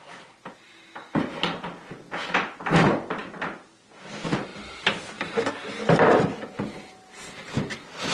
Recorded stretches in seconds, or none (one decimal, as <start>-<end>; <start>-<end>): 0.0-8.1